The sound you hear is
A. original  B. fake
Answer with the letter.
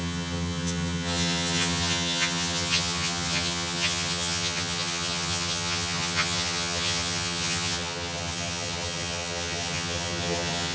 B